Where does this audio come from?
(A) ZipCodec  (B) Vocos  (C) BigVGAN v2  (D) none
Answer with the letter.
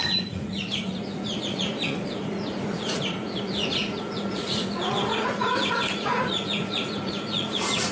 B